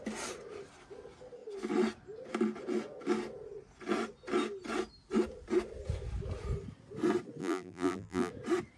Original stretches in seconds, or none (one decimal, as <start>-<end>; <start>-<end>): 0.0-7.4; 8.3-8.8

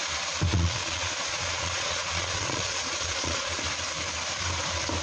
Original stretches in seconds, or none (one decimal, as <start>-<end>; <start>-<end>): 0.0-0.5; 3.5-5.0

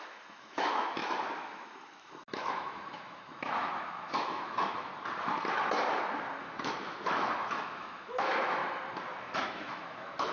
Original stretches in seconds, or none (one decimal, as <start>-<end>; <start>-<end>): 4.9-6.4; 8.6-9.2

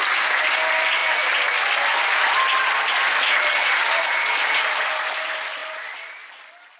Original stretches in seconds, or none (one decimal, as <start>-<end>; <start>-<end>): 0.0-6.8

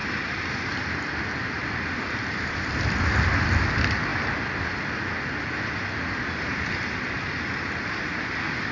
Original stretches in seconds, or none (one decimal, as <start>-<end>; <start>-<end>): 0.0-8.7

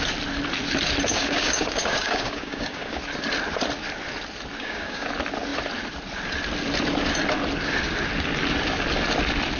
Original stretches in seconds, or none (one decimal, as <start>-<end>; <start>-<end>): 0.0-1.1; 3.0-4.6; 5.1-9.6

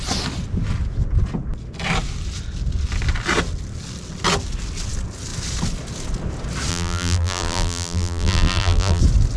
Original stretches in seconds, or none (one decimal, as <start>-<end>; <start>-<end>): 0.0-6.7; 9.0-9.4